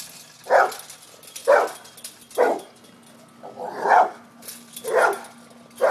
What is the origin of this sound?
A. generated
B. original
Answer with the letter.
B